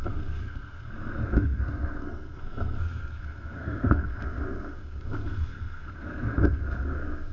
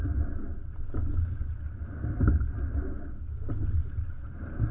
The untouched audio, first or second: second